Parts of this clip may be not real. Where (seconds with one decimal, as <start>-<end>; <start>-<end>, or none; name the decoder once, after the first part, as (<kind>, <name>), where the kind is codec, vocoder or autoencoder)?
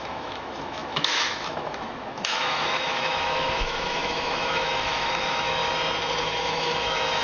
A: 0.0-5.6 (autoencoder, DAC-VAE); 6.2-7.2